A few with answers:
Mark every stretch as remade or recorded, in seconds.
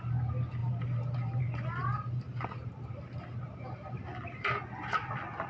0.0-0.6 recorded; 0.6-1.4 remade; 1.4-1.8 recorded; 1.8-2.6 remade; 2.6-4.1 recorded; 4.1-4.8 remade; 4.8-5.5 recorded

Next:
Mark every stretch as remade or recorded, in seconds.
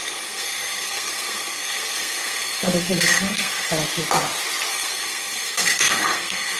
0.0-3.7 remade; 3.7-4.7 recorded; 4.7-6.6 remade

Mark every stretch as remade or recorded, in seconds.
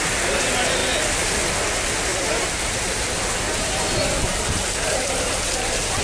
0.0-2.1 recorded; 2.1-6.0 remade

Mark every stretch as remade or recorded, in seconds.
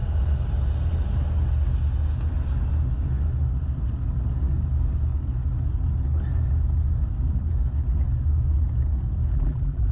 0.0-9.3 recorded; 9.3-9.9 remade